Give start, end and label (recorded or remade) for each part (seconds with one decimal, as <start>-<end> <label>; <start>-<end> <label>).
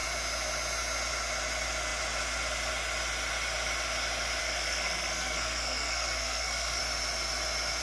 0.0-4.4 recorded; 4.4-6.8 remade; 6.8-7.8 recorded